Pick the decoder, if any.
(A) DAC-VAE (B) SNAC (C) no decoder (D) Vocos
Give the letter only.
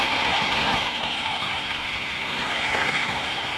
B